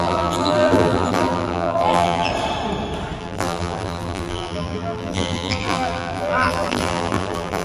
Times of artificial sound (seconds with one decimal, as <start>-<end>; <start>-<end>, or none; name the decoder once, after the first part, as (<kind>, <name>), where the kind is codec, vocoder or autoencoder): 0.0-2.3 (vocoder, BigVGAN v2); 3.2-7.6

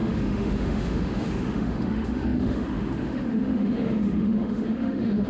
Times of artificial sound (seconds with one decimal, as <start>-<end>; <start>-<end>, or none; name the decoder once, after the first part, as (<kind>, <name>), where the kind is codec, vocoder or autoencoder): 0.0-5.3 (autoencoder, DAC-VAE)